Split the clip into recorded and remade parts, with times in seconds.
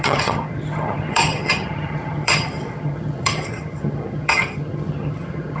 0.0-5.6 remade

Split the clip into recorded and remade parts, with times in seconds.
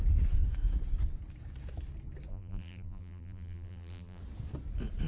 0.0-2.3 recorded; 2.3-4.2 remade; 4.2-5.1 recorded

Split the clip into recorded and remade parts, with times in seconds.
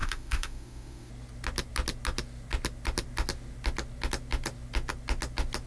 0.0-1.1 remade; 1.1-5.7 recorded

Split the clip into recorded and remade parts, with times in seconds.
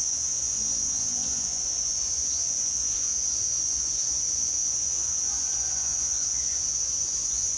0.0-7.6 remade